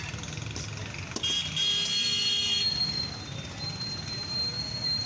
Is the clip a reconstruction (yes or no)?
no